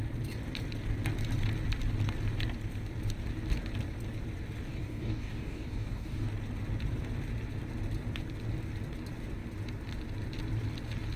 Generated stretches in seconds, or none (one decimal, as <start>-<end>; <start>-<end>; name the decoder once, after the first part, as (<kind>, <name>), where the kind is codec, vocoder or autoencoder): 4.7-6.3 (codec, DAC)